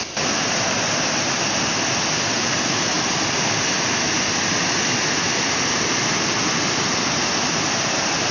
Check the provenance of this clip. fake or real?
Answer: real